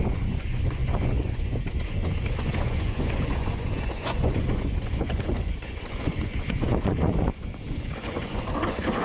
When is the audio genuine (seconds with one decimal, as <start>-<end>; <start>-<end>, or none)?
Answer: none